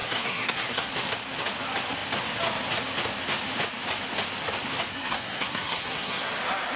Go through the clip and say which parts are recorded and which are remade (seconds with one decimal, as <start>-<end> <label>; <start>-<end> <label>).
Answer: 0.0-0.9 remade; 0.9-4.9 recorded; 4.9-6.3 remade; 6.3-6.8 recorded

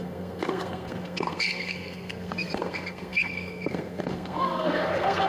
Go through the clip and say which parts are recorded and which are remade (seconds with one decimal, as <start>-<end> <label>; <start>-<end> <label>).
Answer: 0.0-5.3 remade

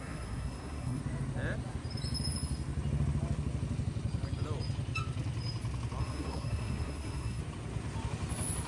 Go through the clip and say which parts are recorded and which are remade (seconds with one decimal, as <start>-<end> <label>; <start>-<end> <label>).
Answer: 0.0-1.0 remade; 1.0-6.0 recorded; 6.0-7.4 remade; 7.4-8.7 recorded

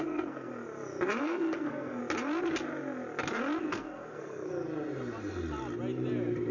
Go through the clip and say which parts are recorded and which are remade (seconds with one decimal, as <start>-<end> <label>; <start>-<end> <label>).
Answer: 0.0-0.5 remade; 0.5-1.2 recorded; 1.2-2.0 remade; 2.0-3.6 recorded; 3.6-4.5 remade; 4.5-6.5 recorded

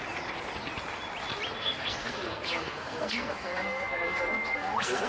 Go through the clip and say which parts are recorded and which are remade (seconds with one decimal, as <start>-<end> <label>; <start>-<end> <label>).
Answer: 0.0-1.6 recorded; 1.6-5.1 remade